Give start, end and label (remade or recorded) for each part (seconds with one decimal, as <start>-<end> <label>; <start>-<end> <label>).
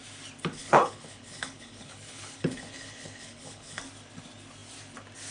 0.0-0.6 recorded; 0.6-3.8 remade; 3.8-5.3 recorded